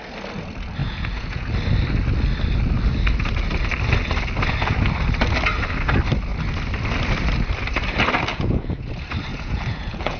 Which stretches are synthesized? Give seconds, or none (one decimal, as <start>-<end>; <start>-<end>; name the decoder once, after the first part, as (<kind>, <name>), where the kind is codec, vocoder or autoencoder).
0.8-1.5 (vocoder, Vocos); 8.3-8.9; 9.3-10.2